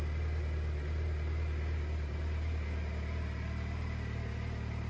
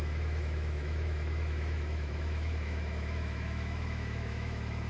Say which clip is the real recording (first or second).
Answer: first